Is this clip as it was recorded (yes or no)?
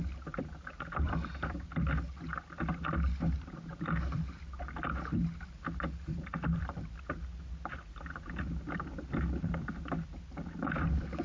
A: yes